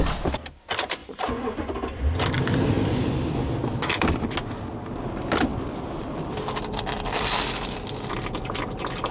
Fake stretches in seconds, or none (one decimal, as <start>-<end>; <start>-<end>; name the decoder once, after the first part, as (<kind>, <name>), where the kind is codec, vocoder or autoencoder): 1.0-1.7 (vocoder, Vocos)